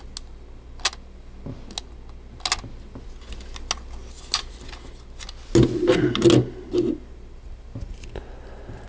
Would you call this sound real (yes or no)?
yes